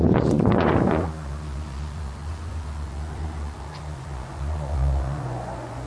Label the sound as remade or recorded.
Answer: remade